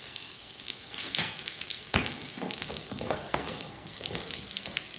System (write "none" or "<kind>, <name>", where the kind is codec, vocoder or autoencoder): codec, SNAC